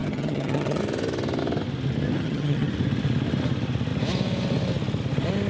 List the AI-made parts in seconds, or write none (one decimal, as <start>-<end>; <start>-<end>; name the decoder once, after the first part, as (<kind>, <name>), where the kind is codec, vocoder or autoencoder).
0.0-0.8 (vocoder, HiFi-GAN); 2.2-2.7